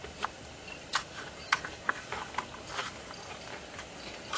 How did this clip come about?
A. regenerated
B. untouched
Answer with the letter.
B